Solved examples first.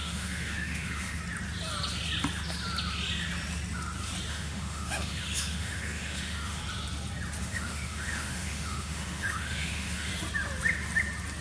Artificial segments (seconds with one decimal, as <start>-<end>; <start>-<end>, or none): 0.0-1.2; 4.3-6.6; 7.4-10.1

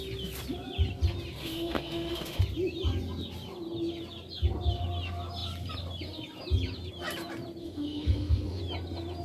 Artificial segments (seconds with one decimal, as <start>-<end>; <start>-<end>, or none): 1.4-2.4; 7.6-8.6

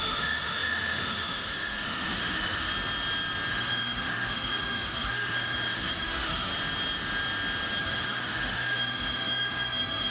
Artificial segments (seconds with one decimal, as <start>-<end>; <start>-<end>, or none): 0.0-2.7; 3.5-6.5; 7.8-10.1

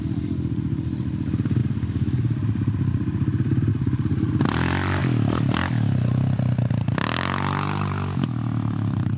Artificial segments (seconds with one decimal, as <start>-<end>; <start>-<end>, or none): none